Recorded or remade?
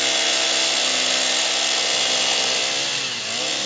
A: recorded